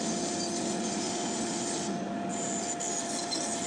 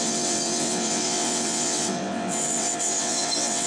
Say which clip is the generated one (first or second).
second